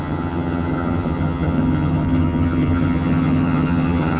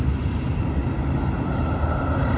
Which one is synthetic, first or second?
first